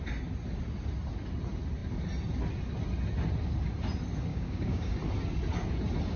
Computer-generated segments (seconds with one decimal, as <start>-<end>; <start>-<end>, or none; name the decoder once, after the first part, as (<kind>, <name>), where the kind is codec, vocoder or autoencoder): 4.3-4.9 (codec, DAC)